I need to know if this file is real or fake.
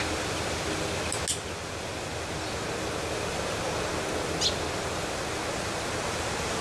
real